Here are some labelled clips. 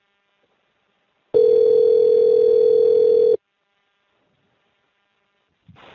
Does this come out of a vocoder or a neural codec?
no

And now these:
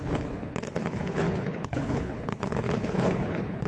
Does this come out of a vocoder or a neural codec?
yes